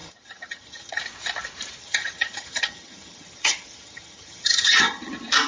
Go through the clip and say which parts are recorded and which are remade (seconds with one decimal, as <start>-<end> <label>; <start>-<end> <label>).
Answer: 0.0-1.0 remade; 1.0-1.8 recorded; 1.8-5.1 remade; 5.1-5.5 recorded